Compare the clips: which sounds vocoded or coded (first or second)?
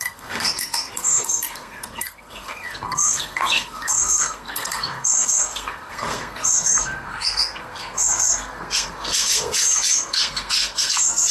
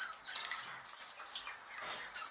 first